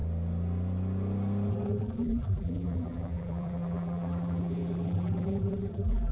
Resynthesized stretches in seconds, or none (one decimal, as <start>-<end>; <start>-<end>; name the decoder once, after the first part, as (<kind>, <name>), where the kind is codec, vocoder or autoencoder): 1.5-6.1 (vocoder, BigVGAN v2)